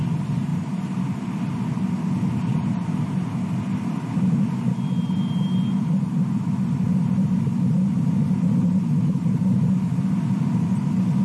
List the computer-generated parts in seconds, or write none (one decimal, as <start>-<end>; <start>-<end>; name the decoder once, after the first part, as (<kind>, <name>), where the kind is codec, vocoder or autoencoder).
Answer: 0.5-1.0 (vocoder, BigVGAN v2); 8.2-10.0